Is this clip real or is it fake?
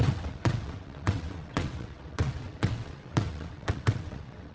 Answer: fake